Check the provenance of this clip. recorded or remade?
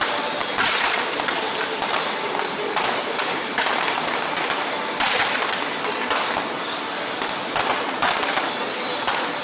recorded